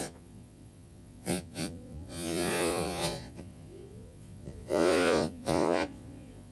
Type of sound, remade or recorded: remade